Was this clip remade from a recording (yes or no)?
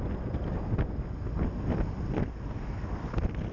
no